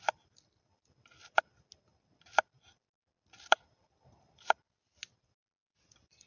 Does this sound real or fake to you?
real